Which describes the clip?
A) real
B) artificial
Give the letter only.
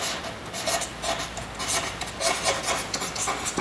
A